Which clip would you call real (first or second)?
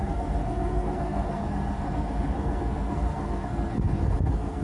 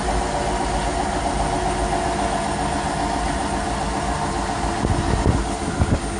second